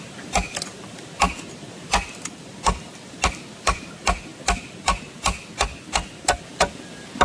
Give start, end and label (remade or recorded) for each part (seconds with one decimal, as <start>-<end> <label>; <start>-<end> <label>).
0.0-2.9 recorded; 2.9-3.9 remade; 3.9-7.2 recorded

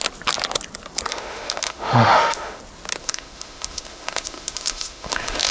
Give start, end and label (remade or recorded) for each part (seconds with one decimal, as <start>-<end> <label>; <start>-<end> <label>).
0.0-1.1 recorded; 1.1-2.6 remade; 2.6-3.0 recorded; 3.0-5.5 remade